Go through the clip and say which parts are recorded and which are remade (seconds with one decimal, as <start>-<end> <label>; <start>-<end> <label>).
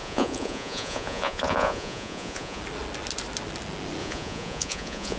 0.0-2.6 remade; 2.6-4.0 recorded; 4.0-5.2 remade